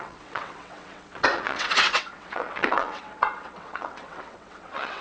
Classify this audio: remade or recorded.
remade